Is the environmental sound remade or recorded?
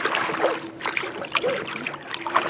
remade